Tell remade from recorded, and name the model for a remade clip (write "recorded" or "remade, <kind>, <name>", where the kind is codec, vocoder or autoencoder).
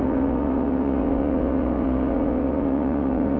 remade, vocoder, Vocos